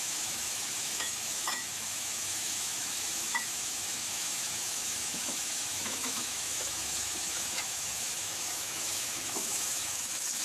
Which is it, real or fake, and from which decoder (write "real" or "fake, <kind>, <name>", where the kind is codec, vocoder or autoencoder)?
fake, autoencoder, DAC-VAE